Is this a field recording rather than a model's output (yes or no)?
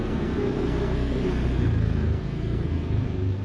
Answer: no